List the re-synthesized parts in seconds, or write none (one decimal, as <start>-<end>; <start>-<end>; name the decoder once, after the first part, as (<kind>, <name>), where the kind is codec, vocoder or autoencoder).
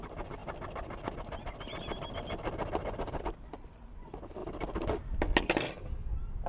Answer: none